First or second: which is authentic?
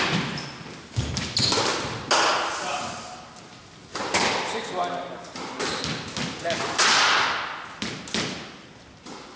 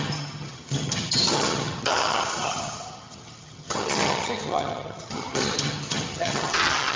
first